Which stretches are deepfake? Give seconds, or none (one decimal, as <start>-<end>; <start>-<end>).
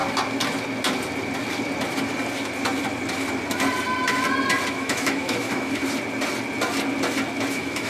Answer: 4.7-5.8; 7.5-7.9